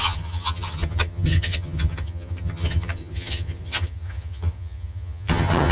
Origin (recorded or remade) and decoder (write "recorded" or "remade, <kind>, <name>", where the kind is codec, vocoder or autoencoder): remade, vocoder, HiFi-GAN